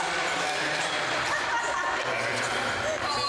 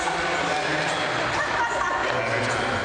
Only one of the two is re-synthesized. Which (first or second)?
first